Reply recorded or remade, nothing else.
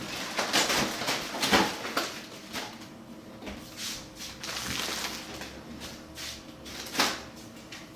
recorded